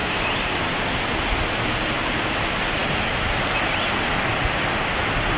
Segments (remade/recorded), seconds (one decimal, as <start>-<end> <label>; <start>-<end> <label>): 0.0-0.5 remade; 0.5-5.4 recorded